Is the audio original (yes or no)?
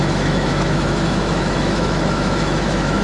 no